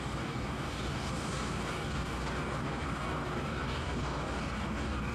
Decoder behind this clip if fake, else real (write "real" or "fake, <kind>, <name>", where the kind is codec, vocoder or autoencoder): fake, codec, DAC